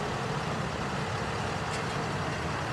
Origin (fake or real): real